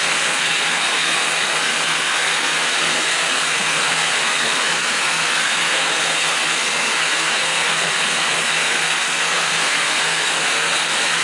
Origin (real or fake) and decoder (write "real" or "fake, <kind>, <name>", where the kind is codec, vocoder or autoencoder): fake, codec, SNAC